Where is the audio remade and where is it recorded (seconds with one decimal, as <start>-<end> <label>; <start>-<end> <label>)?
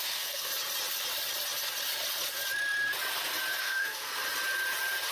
0.0-0.5 remade; 0.5-3.6 recorded; 3.6-4.1 remade; 4.1-5.1 recorded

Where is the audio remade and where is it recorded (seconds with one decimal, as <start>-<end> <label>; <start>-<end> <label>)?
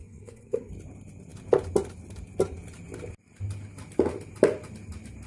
0.0-0.7 remade; 0.7-5.3 recorded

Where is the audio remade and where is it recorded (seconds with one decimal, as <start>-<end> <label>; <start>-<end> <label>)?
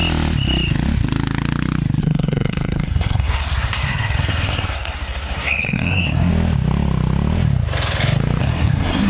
0.0-2.0 recorded; 2.0-6.3 remade; 6.3-8.4 recorded; 8.4-9.1 remade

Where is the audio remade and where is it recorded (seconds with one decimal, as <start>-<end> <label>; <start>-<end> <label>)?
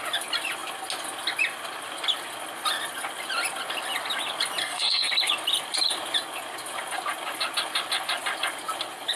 0.0-4.6 recorded; 4.6-5.1 remade; 5.1-9.2 recorded